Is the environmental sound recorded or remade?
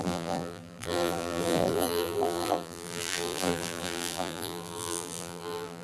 remade